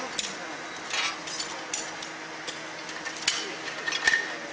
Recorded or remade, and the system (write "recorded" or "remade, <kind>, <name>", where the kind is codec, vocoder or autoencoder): recorded